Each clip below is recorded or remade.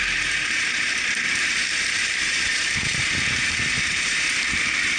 remade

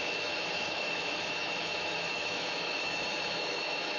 remade